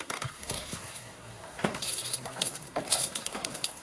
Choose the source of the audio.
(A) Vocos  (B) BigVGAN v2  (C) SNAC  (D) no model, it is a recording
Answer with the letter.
C